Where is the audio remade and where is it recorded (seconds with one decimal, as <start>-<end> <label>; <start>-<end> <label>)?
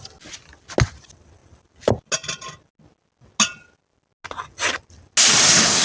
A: 0.0-5.8 recorded